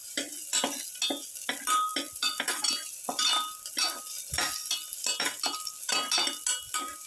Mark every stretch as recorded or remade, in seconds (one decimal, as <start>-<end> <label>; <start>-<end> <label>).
0.0-7.1 recorded